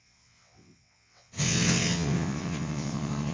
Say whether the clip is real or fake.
fake